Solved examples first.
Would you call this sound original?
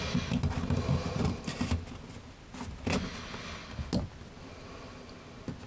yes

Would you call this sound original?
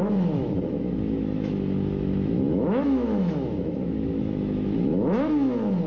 no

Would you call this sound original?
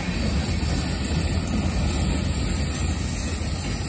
yes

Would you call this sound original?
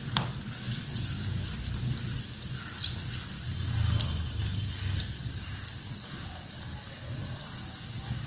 yes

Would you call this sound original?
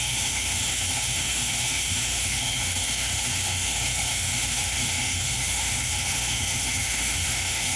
no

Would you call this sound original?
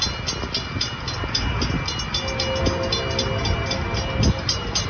yes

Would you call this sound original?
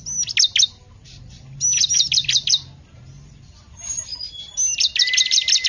yes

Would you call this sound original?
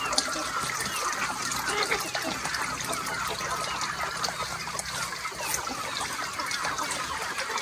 yes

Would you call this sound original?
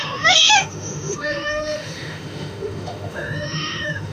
no